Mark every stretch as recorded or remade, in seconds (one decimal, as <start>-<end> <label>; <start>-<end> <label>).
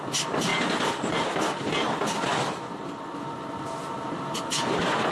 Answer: 0.0-5.1 recorded